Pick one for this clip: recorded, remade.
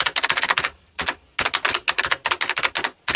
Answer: recorded